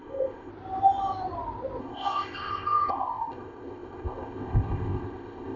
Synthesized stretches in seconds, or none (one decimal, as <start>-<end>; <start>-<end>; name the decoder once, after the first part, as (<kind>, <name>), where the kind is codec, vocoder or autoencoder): 0.0-0.5 (codec, ZipCodec); 1.8-5.6